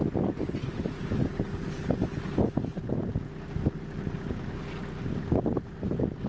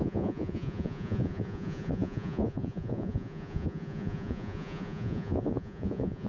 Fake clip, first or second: second